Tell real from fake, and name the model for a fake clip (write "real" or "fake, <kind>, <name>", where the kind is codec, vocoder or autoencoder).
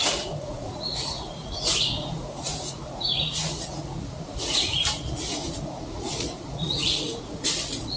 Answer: fake, vocoder, Vocos